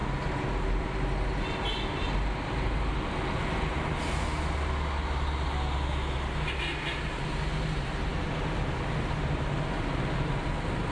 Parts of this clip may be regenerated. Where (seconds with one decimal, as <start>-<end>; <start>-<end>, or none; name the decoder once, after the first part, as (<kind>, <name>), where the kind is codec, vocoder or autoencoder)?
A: none